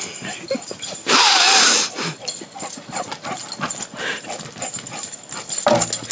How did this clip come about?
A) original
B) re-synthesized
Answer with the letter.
A